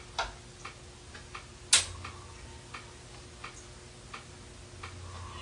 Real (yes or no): yes